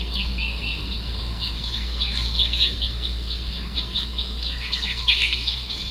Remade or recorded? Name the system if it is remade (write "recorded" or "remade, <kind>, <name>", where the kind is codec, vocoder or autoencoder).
remade, codec, SNAC